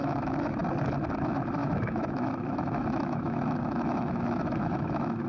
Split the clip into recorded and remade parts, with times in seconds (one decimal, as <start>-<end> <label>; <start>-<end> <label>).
0.0-0.6 remade; 0.6-1.2 recorded; 1.2-5.3 remade